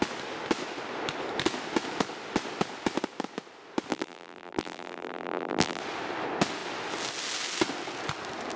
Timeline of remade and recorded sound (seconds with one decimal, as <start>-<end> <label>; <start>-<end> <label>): 0.0-3.9 recorded; 3.9-5.8 remade; 5.8-8.6 recorded